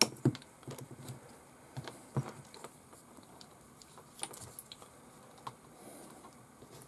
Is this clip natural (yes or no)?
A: yes